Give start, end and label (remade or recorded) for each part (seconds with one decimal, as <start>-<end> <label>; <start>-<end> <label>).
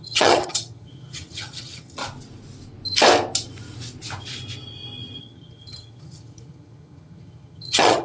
0.0-2.0 remade; 2.0-5.2 recorded; 5.2-8.0 remade